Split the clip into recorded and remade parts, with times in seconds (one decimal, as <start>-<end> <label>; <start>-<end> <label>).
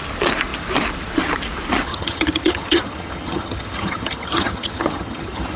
0.0-1.9 recorded; 1.9-5.6 remade